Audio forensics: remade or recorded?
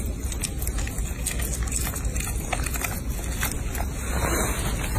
recorded